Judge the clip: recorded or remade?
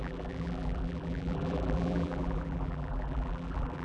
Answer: remade